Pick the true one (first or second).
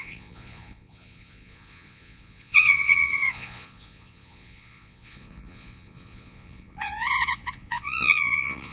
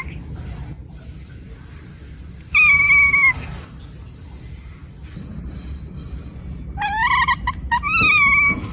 second